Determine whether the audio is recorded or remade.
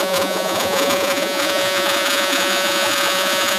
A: remade